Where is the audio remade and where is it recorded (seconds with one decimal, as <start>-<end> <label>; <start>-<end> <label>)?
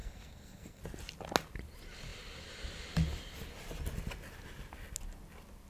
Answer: 0.0-0.8 remade; 0.8-5.7 recorded